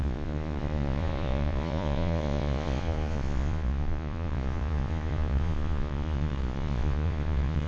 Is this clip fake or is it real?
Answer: fake